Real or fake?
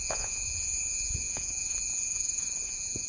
fake